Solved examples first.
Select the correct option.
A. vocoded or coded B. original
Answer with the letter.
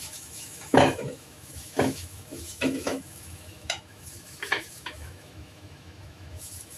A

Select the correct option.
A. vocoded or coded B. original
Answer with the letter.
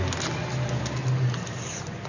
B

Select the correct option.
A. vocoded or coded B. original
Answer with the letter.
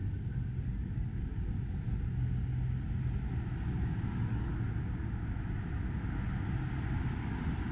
B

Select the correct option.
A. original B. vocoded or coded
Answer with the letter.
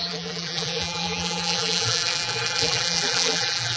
B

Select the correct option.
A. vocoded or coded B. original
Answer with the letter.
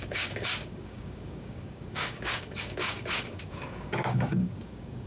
A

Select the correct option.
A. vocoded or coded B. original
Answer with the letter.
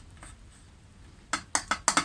B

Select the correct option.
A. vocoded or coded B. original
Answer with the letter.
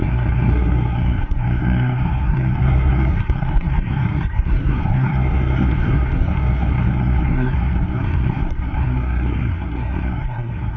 A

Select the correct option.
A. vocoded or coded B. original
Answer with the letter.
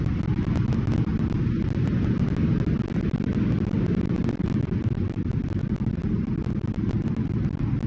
B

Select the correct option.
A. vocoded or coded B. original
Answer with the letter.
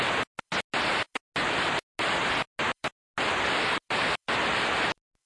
B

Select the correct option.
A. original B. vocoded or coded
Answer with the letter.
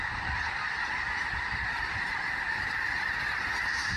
A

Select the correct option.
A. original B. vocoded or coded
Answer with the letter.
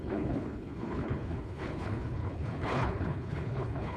B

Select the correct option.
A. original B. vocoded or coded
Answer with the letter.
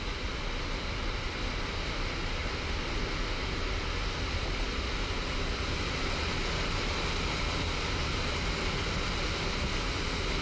A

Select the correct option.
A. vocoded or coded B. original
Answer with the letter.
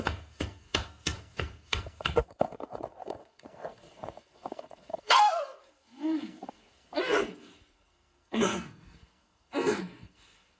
A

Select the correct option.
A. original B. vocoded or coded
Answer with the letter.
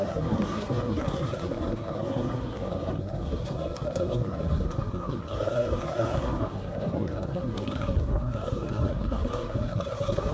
B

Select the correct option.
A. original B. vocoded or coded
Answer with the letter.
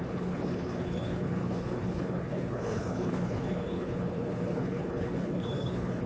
B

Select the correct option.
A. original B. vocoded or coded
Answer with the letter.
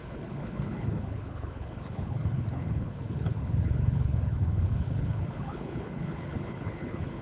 B